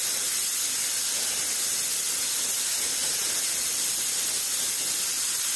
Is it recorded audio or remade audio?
recorded